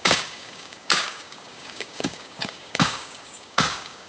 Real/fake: fake